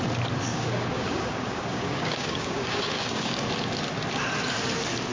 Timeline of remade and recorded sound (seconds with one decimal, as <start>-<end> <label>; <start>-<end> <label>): 0.0-0.5 recorded; 0.5-3.5 remade; 3.5-5.1 recorded